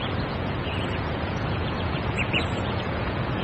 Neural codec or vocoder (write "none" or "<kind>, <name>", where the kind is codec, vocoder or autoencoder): vocoder, Vocos